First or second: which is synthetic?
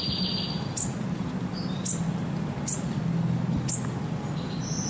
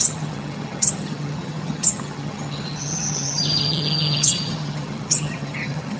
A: second